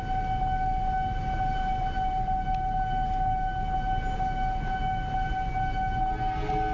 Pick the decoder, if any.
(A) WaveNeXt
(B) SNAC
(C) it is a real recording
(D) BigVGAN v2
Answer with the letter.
C